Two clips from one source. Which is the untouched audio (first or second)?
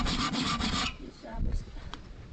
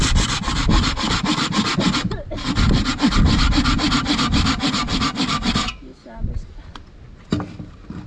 second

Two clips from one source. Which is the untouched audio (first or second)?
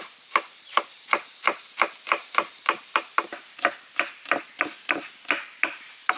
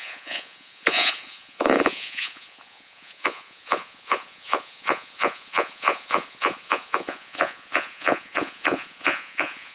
first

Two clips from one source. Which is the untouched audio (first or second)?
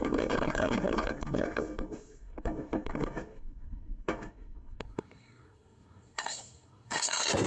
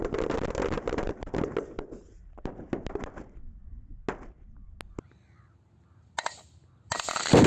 second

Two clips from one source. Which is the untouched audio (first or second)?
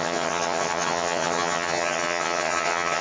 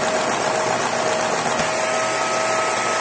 second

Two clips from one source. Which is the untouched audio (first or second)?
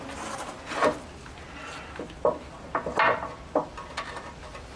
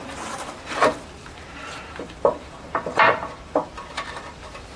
first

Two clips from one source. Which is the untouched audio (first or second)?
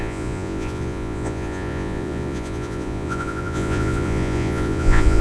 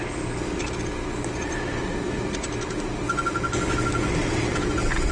second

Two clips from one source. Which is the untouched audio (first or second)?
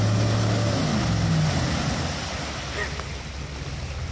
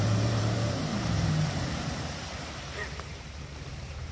first